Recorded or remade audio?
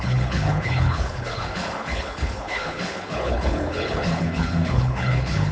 remade